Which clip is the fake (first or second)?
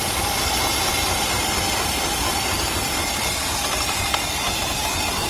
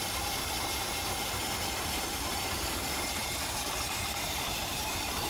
second